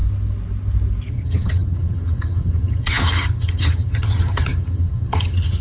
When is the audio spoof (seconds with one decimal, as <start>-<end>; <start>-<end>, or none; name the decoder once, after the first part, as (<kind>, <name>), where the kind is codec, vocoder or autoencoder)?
1.1-5.6 (vocoder, HiFi-GAN)

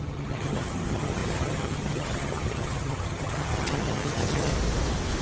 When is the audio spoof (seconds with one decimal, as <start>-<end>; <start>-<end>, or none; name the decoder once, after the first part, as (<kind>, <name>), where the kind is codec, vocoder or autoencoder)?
0.0-4.5 (vocoder, HiFi-GAN)